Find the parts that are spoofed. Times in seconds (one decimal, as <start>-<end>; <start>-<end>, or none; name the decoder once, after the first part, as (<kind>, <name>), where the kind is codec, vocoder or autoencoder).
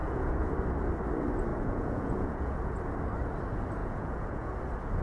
0.0-0.5 (vocoder, Vocos); 1.5-2.8; 3.8-4.5